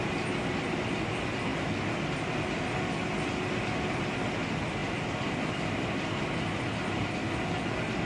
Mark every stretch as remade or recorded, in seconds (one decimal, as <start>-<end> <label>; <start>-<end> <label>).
0.0-8.1 recorded